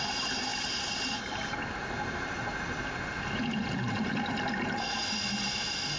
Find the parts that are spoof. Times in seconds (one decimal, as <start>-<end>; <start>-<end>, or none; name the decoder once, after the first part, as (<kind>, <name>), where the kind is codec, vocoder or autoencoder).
none